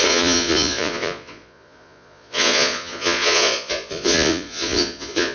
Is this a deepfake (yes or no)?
yes